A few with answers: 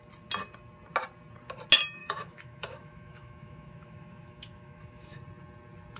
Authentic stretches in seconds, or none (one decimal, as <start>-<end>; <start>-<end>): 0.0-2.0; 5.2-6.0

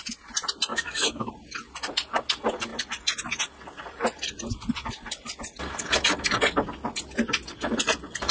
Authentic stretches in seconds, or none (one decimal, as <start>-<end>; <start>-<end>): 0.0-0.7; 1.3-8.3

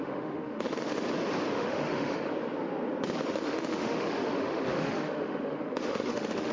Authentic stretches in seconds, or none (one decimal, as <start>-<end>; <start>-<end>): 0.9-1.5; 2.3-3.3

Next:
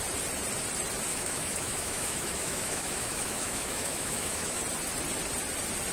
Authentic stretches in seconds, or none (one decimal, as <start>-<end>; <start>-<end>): 0.0-1.1; 4.6-5.9